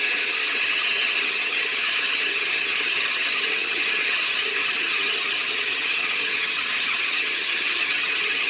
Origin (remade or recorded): remade